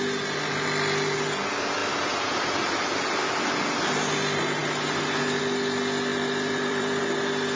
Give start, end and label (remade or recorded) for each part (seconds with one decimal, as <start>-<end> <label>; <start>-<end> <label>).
0.0-6.1 recorded; 6.1-7.0 remade; 7.0-7.6 recorded